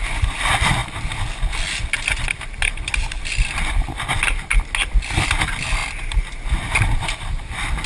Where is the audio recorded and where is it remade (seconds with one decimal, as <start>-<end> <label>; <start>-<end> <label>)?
0.0-7.9 recorded